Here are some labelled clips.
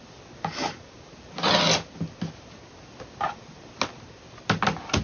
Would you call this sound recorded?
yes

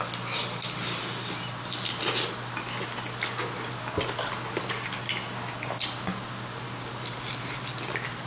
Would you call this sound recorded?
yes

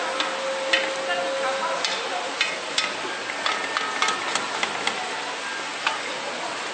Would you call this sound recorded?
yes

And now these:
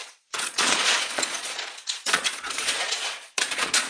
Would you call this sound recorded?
no